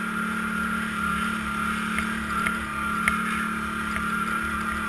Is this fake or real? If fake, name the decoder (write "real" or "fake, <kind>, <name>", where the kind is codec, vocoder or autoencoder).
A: real